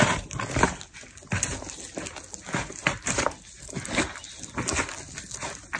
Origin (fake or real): real